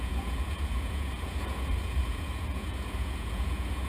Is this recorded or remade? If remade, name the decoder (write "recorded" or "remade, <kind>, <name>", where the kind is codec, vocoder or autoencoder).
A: remade, vocoder, Vocos